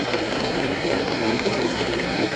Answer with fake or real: fake